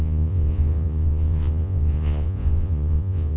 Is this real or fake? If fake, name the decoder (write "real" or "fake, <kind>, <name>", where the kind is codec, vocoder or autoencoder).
fake, vocoder, Vocos